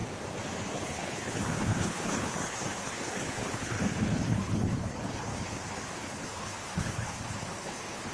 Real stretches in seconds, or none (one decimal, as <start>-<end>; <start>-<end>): 0.0-0.6

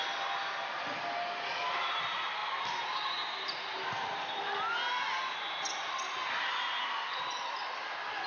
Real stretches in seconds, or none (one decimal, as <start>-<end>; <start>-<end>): 0.0-8.3